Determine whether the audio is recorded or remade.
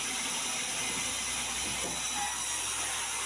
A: recorded